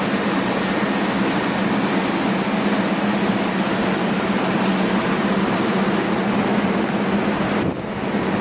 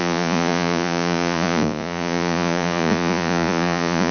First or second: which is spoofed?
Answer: second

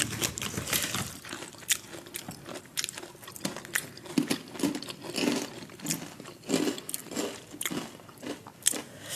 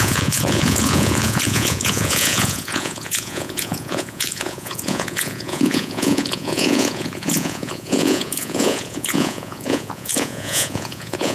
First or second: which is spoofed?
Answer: second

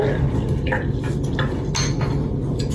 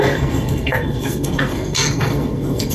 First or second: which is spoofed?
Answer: second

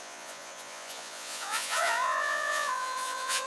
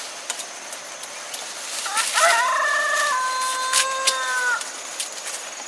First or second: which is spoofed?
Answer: first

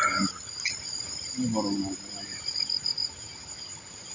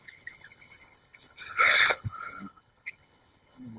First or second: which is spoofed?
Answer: second